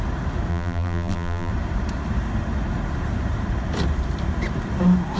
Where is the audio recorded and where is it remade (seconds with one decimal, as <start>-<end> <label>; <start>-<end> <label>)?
0.0-0.5 recorded; 0.5-1.5 remade; 1.5-5.2 recorded